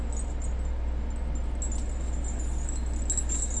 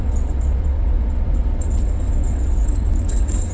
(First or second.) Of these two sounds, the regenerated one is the second